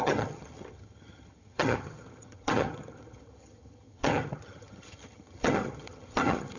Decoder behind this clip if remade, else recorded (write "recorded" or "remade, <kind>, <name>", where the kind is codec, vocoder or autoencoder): remade, vocoder, HiFi-GAN